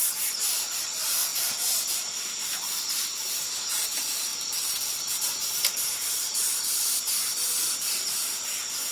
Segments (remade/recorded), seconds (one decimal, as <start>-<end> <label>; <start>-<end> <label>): 0.0-4.3 remade; 4.3-6.1 recorded; 6.1-7.2 remade; 7.2-7.8 recorded; 7.8-8.9 remade